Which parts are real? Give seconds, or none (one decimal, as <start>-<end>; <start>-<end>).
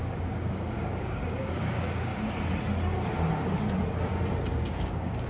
2.1-4.5